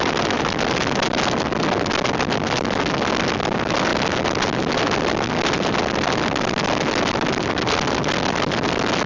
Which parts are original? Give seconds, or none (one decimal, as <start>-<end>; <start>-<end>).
0.0-9.1